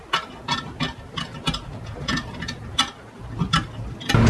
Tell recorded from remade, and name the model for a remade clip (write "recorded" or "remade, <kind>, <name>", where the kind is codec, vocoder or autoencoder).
recorded